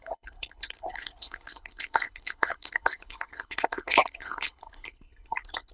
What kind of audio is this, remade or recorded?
remade